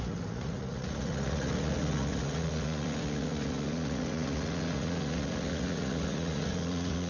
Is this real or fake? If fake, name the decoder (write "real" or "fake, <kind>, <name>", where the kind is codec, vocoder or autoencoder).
fake, vocoder, Vocos